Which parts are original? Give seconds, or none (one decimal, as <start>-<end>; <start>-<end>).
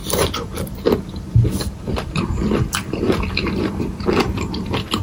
none